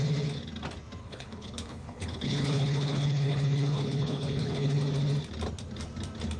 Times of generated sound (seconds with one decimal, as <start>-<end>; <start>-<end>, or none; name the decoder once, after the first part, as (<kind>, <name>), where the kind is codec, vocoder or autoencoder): 1.0-4.8 (codec, HILCodec)

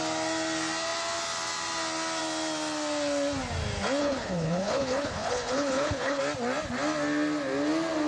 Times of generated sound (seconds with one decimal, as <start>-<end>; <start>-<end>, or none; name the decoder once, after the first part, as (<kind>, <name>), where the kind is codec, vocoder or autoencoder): 4.0-6.2 (codec, HILCodec)

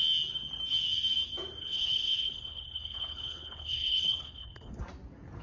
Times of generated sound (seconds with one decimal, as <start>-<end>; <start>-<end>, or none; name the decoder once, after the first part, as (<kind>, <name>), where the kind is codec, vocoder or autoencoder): 1.6-4.8 (codec, HILCodec)

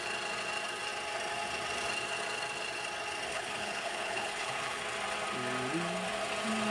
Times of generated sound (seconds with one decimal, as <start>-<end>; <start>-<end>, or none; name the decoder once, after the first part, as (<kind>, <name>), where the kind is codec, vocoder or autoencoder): 3.3-4.8 (codec, HILCodec)

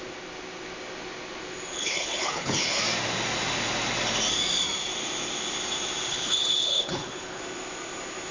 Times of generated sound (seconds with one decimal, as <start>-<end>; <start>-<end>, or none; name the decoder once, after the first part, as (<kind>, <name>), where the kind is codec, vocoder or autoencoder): 1.7-2.8 (codec, HILCodec); 6.1-7.4